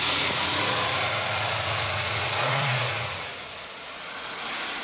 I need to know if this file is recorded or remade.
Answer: remade